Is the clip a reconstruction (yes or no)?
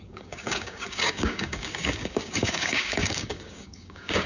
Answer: yes